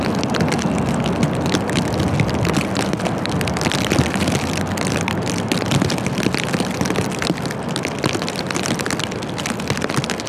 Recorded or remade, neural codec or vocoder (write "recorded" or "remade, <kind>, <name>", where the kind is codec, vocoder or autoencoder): recorded